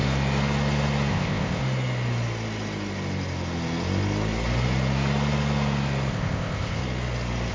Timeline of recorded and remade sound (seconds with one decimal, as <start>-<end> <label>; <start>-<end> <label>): 0.0-1.1 recorded; 1.1-1.6 remade; 1.6-6.1 recorded; 6.1-6.8 remade; 6.8-7.5 recorded